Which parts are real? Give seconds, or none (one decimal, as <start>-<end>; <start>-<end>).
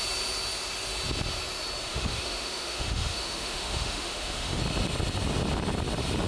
0.0-1.9; 4.6-6.3